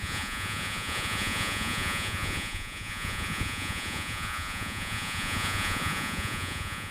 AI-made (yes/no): yes